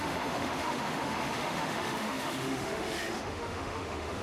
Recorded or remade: remade